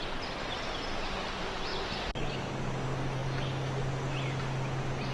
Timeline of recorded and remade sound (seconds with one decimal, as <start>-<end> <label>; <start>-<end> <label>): 0.0-5.1 recorded